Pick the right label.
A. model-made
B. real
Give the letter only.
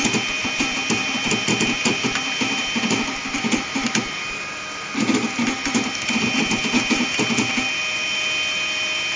A